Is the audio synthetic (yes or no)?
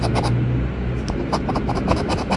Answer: no